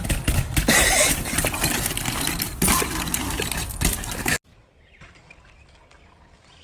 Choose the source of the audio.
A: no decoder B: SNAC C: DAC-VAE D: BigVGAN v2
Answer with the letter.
A